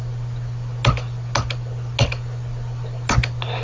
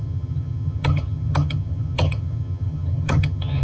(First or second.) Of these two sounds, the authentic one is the first